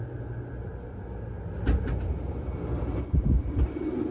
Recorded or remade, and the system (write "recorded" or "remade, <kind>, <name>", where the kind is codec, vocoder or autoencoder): recorded